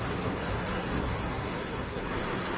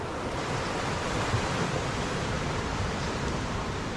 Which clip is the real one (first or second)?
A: second